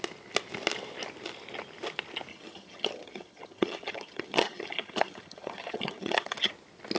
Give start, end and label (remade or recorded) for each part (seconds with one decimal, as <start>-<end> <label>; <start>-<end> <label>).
0.0-2.3 recorded; 2.3-6.5 remade; 6.5-7.0 recorded

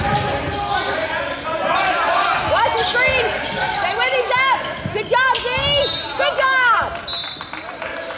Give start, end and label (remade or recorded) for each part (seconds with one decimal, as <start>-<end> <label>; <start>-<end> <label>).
0.0-8.2 recorded

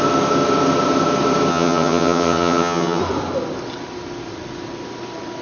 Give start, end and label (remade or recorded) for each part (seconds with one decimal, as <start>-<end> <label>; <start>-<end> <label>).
0.0-1.5 recorded; 1.5-3.0 remade; 3.0-5.4 recorded

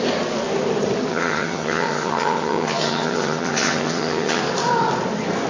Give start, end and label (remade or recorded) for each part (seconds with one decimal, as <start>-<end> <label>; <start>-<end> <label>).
0.0-1.1 recorded; 1.1-4.4 remade; 4.4-5.5 recorded